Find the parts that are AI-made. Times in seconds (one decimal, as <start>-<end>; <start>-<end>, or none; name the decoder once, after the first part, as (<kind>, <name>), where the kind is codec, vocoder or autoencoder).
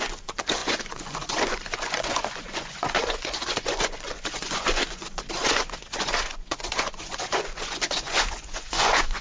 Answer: 0.0-9.2 (vocoder, Vocos)